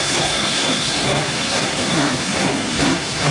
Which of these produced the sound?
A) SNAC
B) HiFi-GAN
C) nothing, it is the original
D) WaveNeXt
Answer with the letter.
A